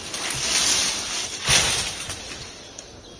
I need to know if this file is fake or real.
real